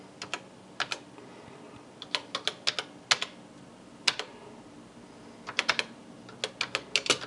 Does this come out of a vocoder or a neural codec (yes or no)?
no